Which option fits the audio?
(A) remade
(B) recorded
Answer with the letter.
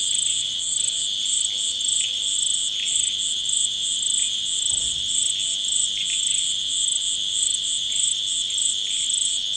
B